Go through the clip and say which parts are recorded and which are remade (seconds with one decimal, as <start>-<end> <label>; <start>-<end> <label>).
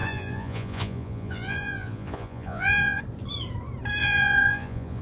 0.0-3.0 remade; 3.0-4.0 recorded; 4.0-5.0 remade